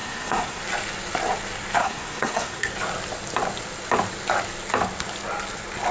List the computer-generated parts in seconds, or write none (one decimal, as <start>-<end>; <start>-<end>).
0.0-0.6; 1.8-2.7

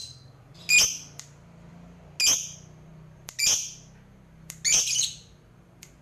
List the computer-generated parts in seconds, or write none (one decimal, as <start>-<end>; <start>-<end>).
none

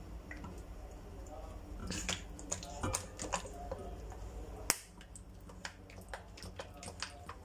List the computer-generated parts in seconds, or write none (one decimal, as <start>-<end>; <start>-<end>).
none

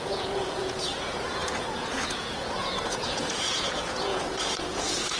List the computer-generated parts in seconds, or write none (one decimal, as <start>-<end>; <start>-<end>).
0.0-5.2

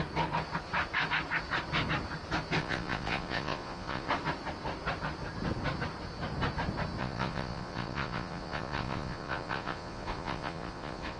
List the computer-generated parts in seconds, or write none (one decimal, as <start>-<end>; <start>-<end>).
2.6-4.1; 7.0-11.2

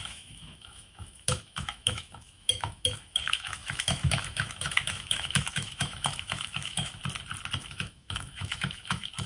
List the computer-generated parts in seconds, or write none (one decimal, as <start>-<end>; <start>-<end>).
0.0-7.0; 7.6-9.3